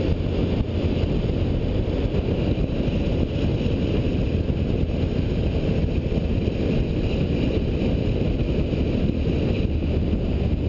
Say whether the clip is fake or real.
real